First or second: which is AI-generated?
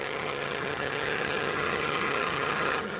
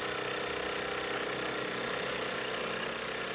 first